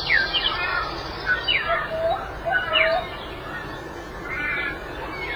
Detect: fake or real real